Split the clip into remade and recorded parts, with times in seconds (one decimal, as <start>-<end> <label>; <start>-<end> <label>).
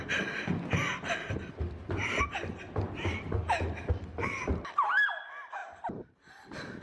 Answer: 0.0-0.9 recorded; 0.9-2.3 remade; 2.3-5.6 recorded; 5.6-6.8 remade